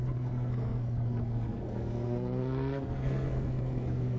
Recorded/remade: remade